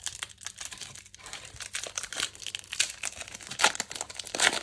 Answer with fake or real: real